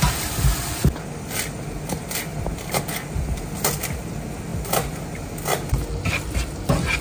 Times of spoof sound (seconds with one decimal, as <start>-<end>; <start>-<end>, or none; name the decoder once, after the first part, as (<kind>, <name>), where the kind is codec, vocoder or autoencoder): none